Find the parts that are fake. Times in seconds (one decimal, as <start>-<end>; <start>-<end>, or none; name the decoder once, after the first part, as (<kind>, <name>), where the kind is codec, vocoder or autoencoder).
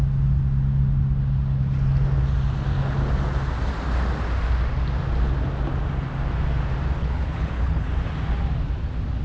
7.0-7.9 (codec, HILCodec)